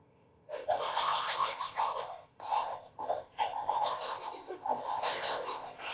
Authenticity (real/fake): fake